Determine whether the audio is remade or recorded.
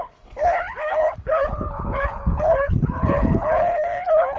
remade